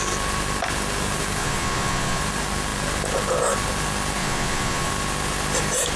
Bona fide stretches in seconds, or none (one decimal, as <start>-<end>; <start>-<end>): 0.0-1.4; 2.2-4.2; 4.9-6.0